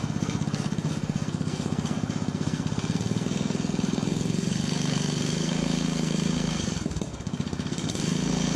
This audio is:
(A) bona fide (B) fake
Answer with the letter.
B